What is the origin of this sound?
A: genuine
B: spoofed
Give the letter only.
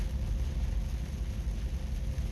A